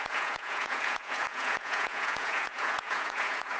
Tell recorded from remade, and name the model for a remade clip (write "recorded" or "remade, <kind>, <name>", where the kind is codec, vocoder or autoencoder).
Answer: remade, vocoder, Vocos